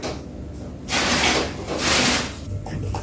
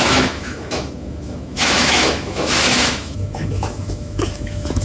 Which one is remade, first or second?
second